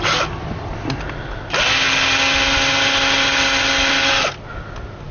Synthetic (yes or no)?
no